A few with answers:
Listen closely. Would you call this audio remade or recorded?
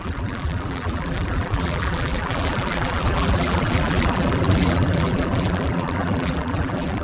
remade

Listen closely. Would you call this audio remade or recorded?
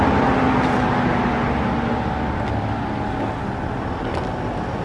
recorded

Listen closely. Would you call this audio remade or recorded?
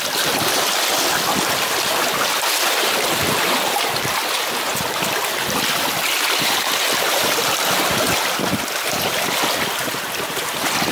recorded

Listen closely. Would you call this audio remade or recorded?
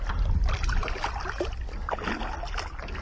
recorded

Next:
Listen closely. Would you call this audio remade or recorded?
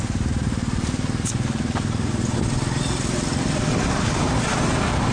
recorded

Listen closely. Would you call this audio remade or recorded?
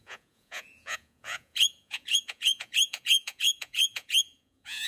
remade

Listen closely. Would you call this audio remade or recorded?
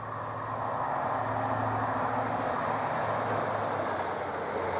recorded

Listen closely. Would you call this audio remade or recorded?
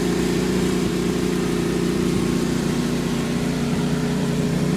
remade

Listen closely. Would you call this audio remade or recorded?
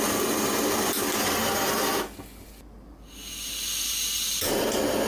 recorded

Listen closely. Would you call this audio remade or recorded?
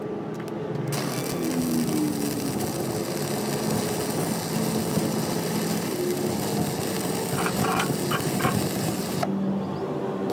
recorded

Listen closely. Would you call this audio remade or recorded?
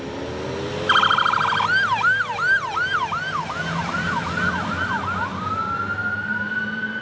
recorded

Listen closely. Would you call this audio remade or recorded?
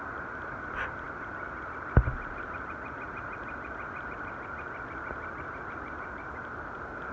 recorded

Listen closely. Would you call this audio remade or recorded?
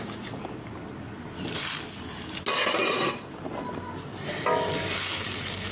recorded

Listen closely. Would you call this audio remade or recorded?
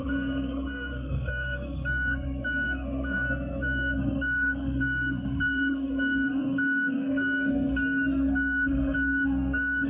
remade